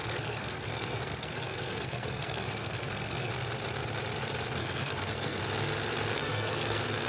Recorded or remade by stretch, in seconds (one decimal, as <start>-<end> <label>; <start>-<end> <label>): 0.0-3.3 remade; 3.3-4.6 recorded; 4.6-5.4 remade; 5.4-6.1 recorded; 6.1-7.1 remade